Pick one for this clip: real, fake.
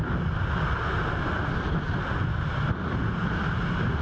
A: real